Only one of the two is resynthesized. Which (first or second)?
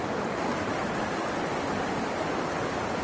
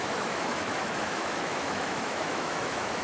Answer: second